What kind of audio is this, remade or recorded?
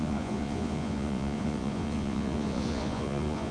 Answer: remade